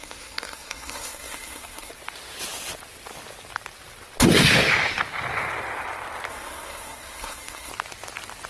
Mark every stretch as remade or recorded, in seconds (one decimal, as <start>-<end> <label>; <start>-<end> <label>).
0.0-1.9 remade; 1.9-6.3 recorded; 6.3-7.7 remade; 7.7-8.5 recorded